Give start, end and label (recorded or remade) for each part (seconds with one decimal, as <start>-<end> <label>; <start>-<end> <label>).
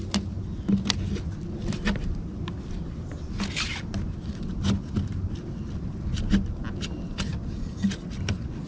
0.0-8.7 recorded